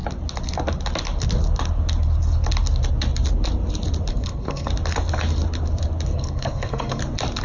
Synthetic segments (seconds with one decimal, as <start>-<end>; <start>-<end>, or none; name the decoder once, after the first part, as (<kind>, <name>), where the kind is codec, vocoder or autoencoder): 4.1-4.7 (codec, SNAC); 6.1-7.0